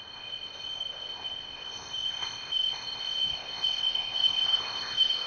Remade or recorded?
remade